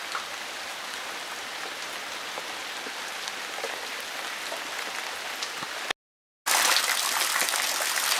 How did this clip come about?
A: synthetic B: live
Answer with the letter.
B